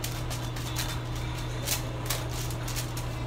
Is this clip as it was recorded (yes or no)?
yes